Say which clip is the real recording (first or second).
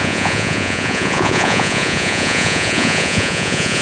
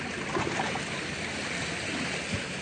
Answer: second